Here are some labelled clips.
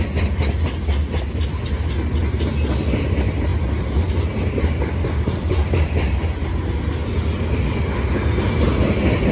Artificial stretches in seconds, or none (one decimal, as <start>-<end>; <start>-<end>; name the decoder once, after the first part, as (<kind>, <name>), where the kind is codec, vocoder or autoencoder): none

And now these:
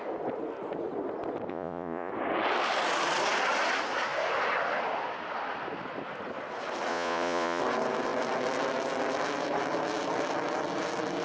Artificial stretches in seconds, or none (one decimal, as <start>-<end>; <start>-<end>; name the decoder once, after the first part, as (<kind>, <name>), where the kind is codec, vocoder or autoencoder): 1.5-2.1 (vocoder, Vocos); 6.9-7.6

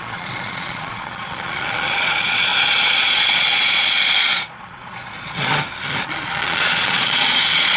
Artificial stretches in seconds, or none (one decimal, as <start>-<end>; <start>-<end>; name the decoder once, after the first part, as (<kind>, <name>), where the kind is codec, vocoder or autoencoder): 0.0-2.5 (vocoder, Vocos); 3.2-5.5; 6.0-7.8

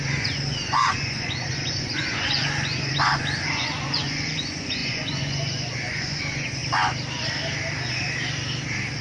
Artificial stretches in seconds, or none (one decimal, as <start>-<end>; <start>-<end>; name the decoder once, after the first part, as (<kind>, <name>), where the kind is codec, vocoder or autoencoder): 0.0-6.6 (vocoder, Vocos)